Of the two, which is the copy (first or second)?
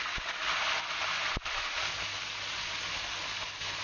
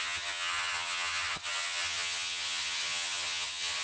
second